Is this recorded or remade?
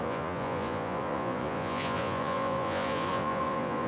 remade